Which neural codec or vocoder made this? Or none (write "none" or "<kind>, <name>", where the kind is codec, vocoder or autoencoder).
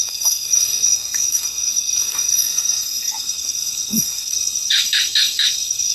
codec, SNAC